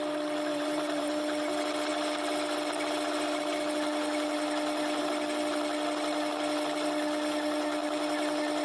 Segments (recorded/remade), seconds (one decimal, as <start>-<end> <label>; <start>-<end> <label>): 0.0-0.5 recorded; 0.5-1.1 remade; 1.1-8.6 recorded